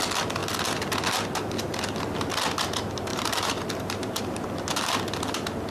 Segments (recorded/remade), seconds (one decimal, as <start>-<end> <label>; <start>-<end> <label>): 0.0-3.1 recorded; 3.1-4.2 remade; 4.2-5.7 recorded